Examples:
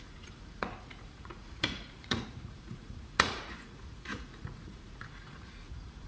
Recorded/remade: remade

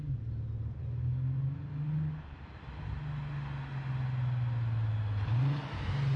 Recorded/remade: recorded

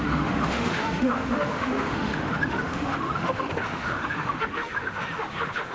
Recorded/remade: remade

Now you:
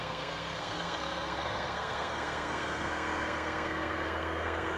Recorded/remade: remade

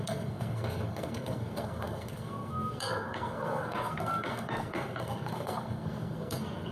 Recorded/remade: remade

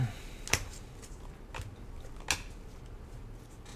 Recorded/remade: recorded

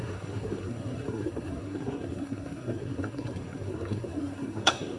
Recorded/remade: remade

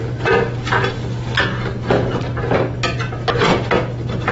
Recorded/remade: recorded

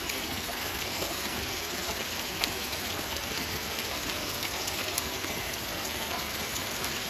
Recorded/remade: remade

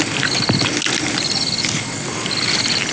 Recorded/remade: recorded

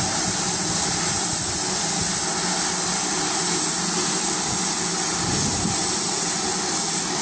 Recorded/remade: recorded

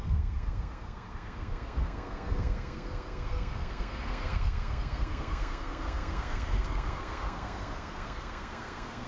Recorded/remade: remade